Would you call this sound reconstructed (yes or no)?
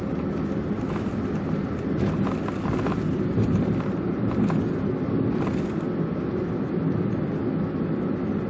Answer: no